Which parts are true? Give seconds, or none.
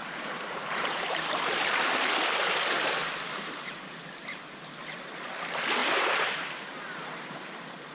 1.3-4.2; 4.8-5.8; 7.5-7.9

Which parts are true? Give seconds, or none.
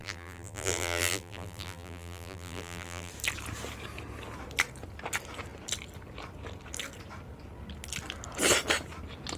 3.1-9.4